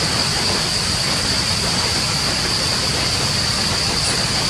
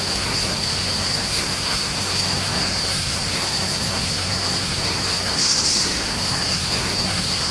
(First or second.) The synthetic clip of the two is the second